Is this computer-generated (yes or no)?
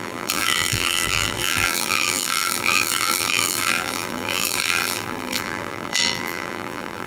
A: yes